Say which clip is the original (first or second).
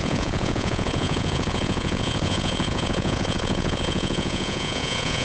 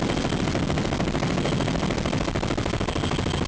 second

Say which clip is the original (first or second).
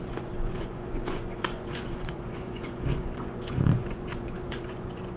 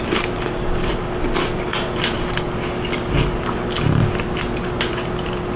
second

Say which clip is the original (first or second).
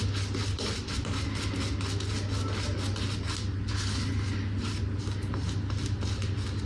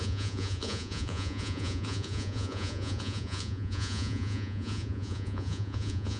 first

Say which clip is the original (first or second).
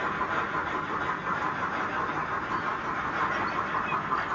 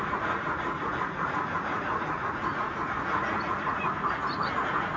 first